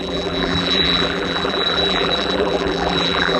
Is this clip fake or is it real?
fake